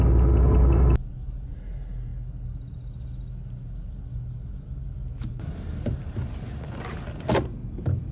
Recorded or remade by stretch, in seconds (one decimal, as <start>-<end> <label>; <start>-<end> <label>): 0.0-8.1 recorded